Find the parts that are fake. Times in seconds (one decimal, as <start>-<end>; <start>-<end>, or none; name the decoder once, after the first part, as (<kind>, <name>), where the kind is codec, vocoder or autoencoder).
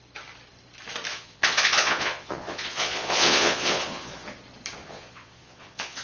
1.1-4.1 (vocoder, Vocos); 4.8-6.0